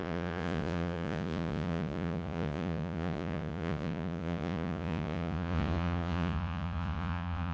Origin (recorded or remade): remade